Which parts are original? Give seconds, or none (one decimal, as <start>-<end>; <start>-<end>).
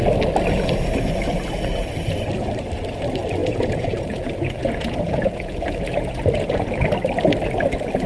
0.0-3.4; 6.9-8.1